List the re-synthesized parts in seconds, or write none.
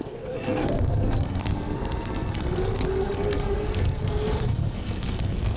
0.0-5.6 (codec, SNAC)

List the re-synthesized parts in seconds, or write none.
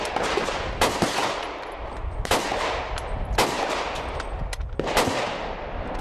none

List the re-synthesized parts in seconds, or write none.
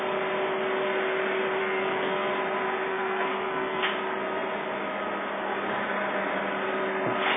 1.6-2.3 (codec, SNAC); 2.9-3.8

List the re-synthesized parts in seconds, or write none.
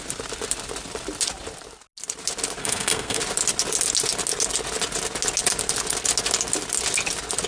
2.6-3.2 (codec, SNAC)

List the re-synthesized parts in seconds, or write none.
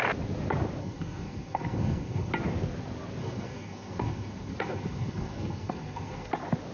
0.8-2.3 (codec, SNAC); 3.2-6.3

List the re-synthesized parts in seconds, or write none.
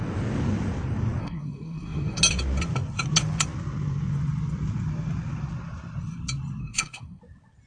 1.2-2.2 (codec, SNAC); 6.6-7.2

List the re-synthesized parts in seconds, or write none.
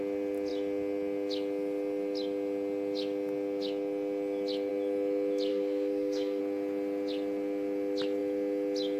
5.5-6.4 (codec, SNAC)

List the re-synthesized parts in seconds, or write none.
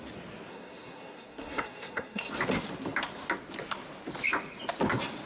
0.5-2.3 (codec, SNAC)